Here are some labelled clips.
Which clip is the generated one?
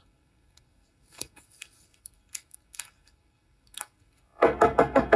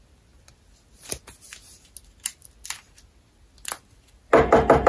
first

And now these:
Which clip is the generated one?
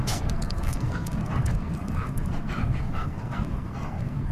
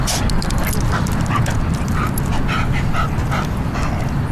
first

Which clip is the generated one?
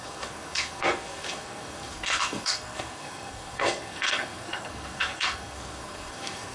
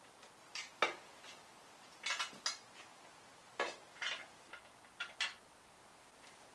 first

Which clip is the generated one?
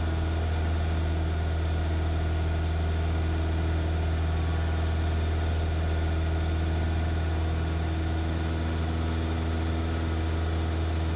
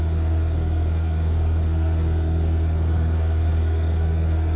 second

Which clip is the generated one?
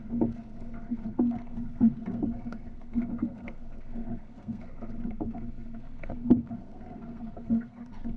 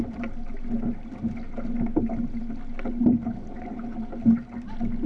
first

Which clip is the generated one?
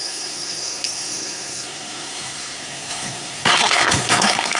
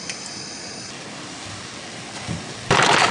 first